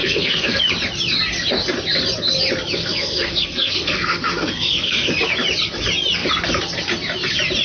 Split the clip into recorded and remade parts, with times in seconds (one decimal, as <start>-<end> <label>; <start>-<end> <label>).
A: 0.0-0.6 remade; 0.6-2.8 recorded; 2.8-5.1 remade; 5.1-7.6 recorded